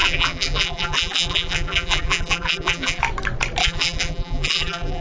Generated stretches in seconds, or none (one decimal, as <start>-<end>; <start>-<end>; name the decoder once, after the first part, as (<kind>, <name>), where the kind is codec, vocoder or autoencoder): 0.0-3.0 (vocoder, BigVGAN v2); 3.6-5.0